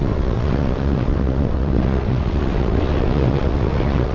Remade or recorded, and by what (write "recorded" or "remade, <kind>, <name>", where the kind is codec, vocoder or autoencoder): remade, vocoder, WaveNeXt